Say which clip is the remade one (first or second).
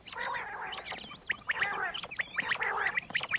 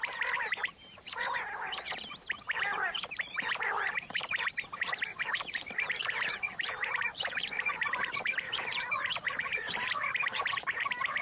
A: second